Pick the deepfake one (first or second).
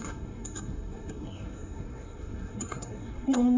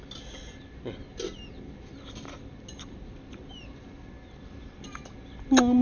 first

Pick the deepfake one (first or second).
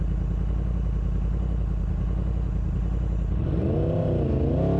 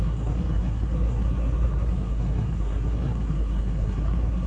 second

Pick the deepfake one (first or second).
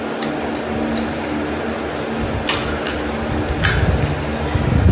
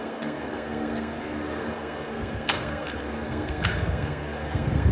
second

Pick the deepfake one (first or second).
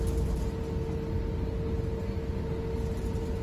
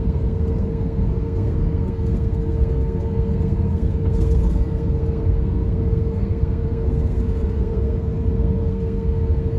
second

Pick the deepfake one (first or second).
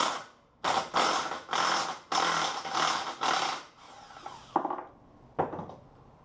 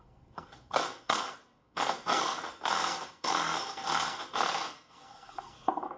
second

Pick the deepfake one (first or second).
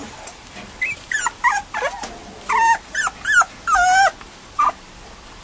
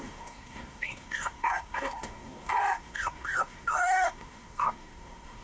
second